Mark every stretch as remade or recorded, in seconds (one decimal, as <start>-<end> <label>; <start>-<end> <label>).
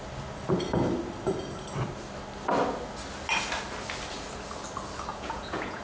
0.0-5.1 recorded; 5.1-5.8 remade